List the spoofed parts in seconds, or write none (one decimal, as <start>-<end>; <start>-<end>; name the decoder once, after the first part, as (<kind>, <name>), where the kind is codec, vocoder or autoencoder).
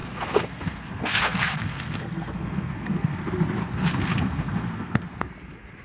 0.0-3.2 (codec, SNAC); 3.6-5.3